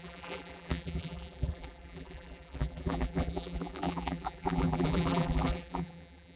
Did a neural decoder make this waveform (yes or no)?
yes